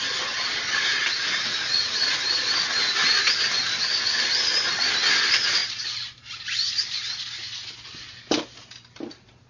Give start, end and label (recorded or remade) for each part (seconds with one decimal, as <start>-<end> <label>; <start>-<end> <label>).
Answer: 0.0-1.2 recorded; 1.2-2.1 remade; 2.1-9.5 recorded